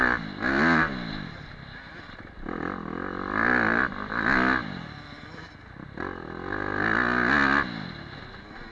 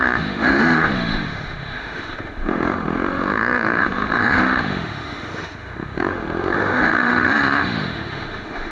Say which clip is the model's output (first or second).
second